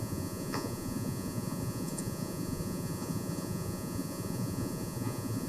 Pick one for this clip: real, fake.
fake